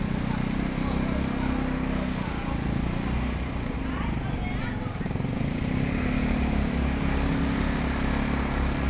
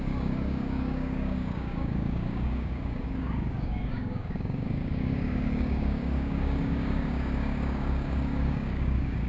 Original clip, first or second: first